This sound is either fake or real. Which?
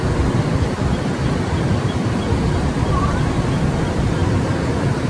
fake